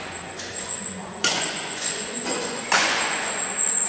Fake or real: fake